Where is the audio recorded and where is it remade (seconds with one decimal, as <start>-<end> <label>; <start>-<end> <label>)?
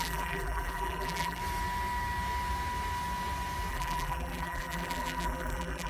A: 0.0-1.4 remade; 1.4-3.7 recorded; 3.7-5.9 remade